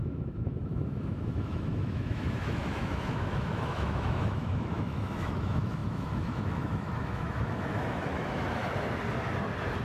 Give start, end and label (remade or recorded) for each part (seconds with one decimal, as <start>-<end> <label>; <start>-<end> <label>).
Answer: 0.0-8.6 remade; 8.6-9.8 recorded